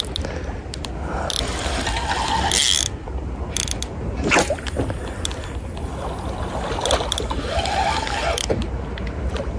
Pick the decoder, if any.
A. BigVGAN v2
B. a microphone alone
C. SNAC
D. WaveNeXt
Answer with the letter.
B